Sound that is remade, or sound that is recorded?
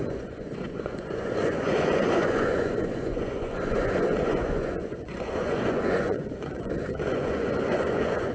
remade